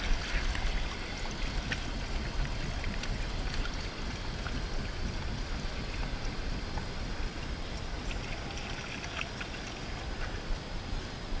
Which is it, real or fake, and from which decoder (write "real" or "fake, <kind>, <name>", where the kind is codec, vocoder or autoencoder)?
real